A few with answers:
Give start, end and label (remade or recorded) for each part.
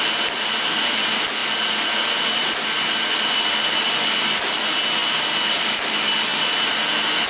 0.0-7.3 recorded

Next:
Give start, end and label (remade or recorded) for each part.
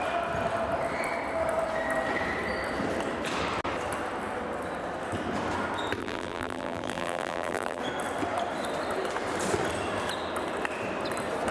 0.0-6.0 recorded; 6.0-7.8 remade; 7.8-11.5 recorded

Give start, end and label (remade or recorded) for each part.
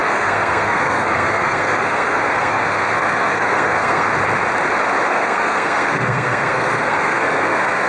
0.0-4.1 remade; 4.1-5.1 recorded; 5.1-7.9 remade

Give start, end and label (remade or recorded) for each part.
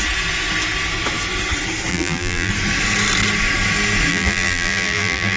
0.0-1.9 recorded; 1.9-2.5 remade; 2.5-4.1 recorded; 4.1-5.4 remade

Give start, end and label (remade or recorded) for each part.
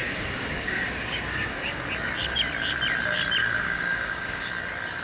0.0-1.9 remade; 1.9-3.4 recorded; 3.4-4.5 remade; 4.5-5.0 recorded